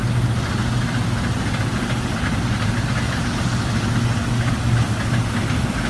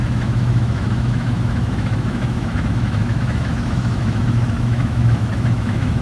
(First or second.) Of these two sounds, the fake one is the second